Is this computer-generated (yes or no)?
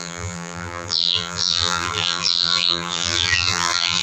yes